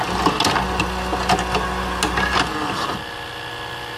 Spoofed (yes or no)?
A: no